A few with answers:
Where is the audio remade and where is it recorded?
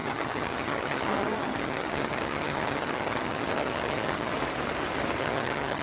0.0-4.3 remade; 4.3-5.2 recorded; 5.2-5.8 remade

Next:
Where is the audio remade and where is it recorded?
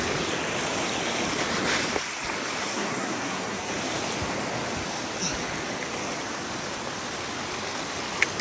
0.0-2.6 recorded; 2.6-3.7 remade; 3.7-8.4 recorded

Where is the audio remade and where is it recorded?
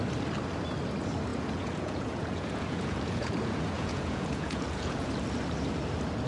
0.0-1.3 recorded; 1.3-5.1 remade; 5.1-6.3 recorded